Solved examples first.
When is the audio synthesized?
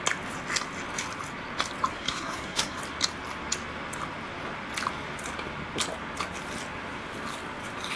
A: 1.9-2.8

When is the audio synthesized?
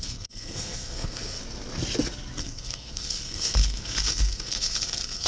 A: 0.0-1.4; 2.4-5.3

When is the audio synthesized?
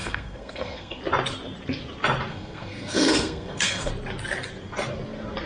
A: 0.0-1.0; 2.3-3.9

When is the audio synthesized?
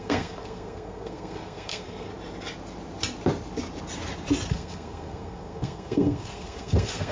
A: 0.0-2.1; 4.5-7.1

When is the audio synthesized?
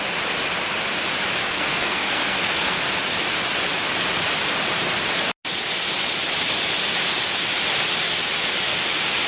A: 1.4-2.8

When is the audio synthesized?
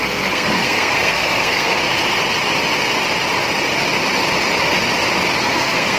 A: 0.0-1.8; 5.4-6.0